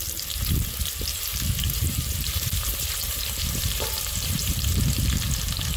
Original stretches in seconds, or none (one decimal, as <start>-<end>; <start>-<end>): 0.0-1.1; 4.6-5.8